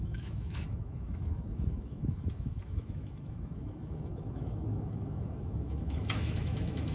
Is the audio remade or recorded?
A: remade